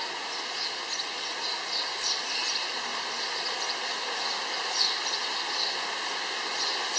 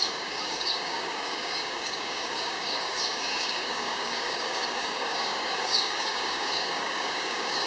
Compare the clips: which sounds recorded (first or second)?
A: first